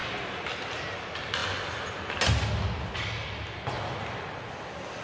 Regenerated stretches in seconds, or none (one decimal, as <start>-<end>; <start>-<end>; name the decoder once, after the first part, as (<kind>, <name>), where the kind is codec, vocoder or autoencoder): none